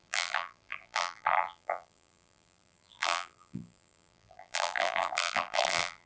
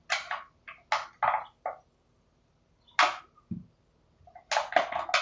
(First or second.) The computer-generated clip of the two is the first